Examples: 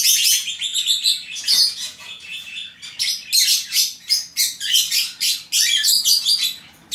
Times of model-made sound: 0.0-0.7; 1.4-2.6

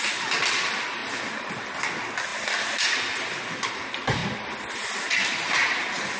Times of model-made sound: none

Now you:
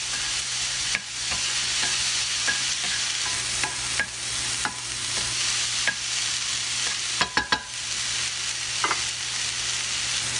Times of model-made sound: 0.0-3.1